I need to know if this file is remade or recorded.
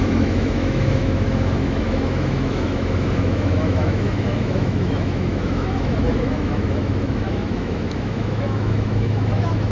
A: remade